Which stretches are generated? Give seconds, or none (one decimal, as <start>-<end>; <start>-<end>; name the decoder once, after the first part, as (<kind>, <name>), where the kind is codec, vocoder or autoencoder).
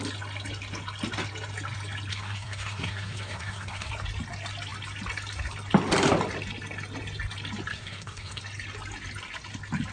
2.1-3.9 (codec, SNAC); 7.7-8.4